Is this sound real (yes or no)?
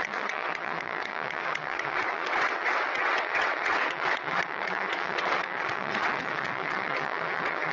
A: no